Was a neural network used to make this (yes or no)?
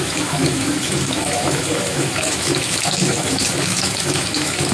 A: yes